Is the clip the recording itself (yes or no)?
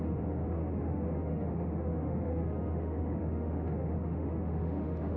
no